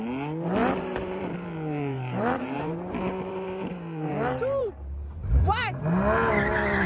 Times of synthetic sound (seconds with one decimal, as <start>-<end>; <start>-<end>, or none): 0.6-4.7; 5.2-5.8